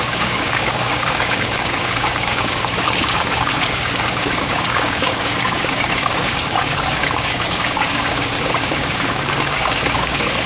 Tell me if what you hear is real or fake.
fake